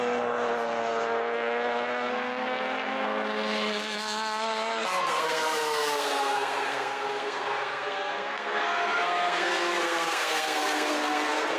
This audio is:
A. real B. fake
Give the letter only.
B